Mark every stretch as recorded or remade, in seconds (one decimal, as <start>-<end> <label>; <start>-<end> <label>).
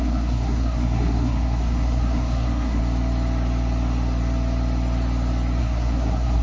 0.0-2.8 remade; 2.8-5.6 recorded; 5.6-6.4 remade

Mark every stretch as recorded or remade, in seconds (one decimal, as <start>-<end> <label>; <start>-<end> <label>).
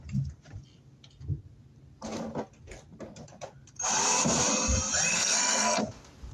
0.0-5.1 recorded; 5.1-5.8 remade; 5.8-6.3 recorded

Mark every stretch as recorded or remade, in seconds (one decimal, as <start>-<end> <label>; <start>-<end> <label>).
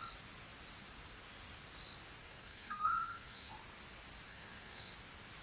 0.0-2.2 recorded; 2.2-3.5 remade; 3.5-4.3 recorded; 4.3-4.9 remade; 4.9-5.4 recorded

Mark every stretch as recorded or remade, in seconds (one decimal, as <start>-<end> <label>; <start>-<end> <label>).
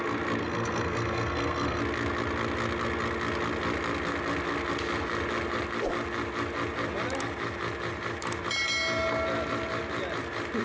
0.0-0.4 recorded; 0.4-1.8 remade; 1.8-10.6 recorded